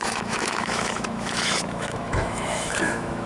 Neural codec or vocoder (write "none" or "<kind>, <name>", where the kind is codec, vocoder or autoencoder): autoencoder, DAC-VAE